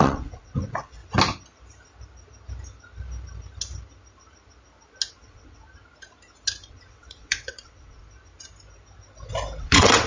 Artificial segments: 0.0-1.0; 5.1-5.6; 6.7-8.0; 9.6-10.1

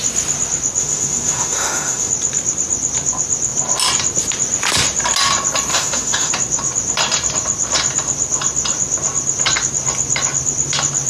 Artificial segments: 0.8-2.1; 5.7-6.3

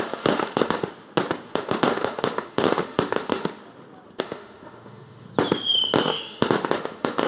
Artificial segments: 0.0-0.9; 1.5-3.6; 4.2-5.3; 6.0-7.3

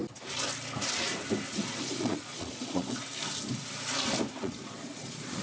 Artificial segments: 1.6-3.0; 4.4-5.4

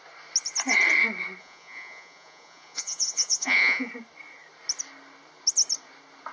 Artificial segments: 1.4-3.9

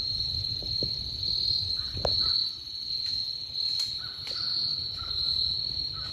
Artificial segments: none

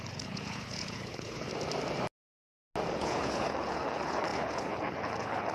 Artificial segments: 0.0-1.5; 2.9-5.5